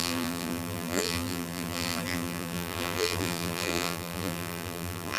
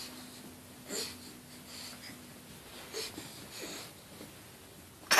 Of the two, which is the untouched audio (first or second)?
second